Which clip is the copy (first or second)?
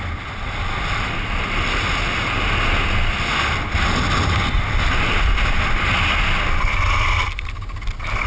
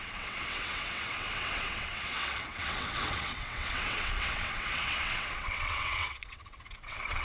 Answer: second